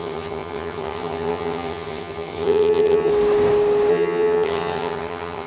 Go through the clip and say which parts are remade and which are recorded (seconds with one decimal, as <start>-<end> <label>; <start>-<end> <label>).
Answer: 0.0-3.1 remade; 3.1-3.9 recorded; 3.9-5.5 remade